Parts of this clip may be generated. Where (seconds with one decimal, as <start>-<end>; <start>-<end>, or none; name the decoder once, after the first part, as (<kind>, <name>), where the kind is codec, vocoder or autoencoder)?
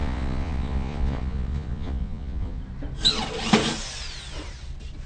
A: 0.0-2.6 (vocoder, Vocos)